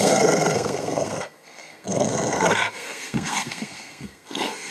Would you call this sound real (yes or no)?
no